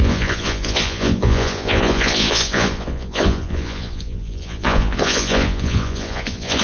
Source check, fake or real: fake